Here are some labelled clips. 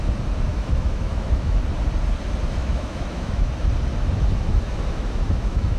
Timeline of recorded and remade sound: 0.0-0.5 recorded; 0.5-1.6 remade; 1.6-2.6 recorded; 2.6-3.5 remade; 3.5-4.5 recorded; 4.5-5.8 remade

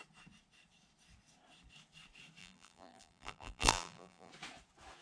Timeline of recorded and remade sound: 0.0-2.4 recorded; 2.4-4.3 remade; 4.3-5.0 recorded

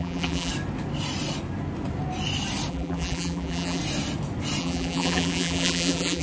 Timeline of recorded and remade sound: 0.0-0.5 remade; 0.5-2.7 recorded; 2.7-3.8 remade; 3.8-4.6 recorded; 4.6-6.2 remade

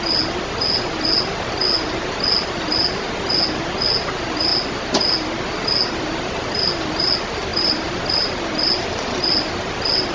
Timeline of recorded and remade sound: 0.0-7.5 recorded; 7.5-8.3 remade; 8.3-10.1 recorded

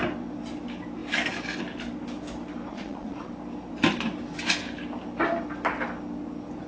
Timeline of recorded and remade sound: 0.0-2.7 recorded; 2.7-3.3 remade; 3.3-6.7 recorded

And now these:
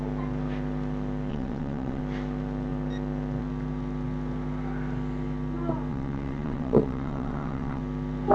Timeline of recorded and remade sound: 0.0-1.3 recorded; 1.3-2.0 remade; 2.0-5.9 recorded; 5.9-7.8 remade; 7.8-8.3 recorded